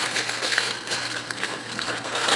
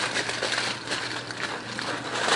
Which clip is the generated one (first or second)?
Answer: first